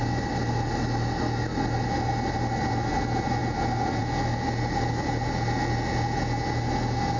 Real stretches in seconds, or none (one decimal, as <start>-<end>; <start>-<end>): 0.0-7.2